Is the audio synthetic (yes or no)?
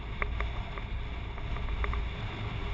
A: no